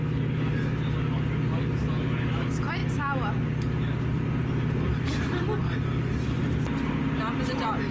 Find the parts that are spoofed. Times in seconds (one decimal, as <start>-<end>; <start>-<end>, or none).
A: none